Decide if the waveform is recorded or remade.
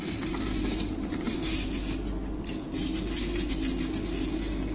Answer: recorded